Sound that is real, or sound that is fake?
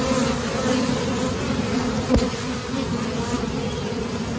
real